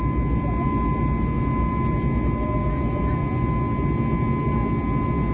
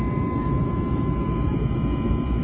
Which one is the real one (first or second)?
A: first